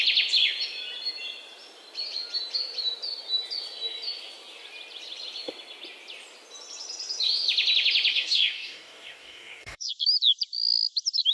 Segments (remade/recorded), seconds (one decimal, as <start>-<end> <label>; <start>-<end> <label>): 0.0-8.1 recorded; 8.1-9.9 remade; 9.9-11.3 recorded